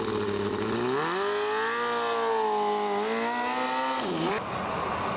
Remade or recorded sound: recorded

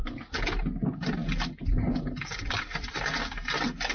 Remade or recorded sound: recorded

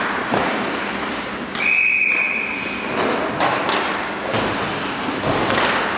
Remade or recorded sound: recorded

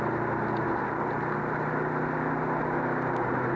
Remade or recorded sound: recorded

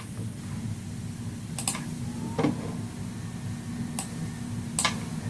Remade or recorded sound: recorded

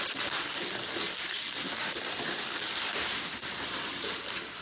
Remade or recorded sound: recorded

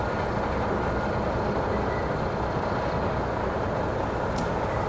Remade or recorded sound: recorded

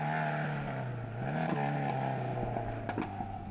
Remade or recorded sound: recorded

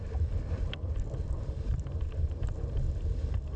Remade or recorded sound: remade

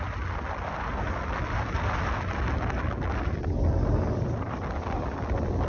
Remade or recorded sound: recorded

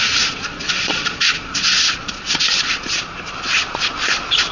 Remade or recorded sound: remade